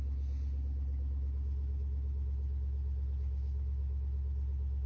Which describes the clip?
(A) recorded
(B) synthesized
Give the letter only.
A